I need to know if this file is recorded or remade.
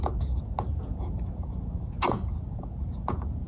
remade